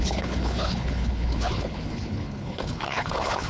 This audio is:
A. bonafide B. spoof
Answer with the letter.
B